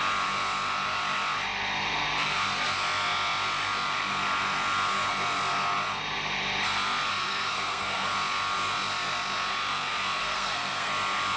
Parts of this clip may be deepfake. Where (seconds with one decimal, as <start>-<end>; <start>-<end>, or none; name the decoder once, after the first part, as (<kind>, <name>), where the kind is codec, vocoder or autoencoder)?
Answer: 7.1-8.1 (codec, SNAC); 10.2-10.9